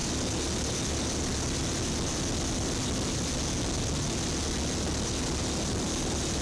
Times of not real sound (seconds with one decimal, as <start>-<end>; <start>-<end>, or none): none